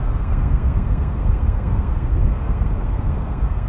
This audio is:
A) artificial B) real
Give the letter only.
A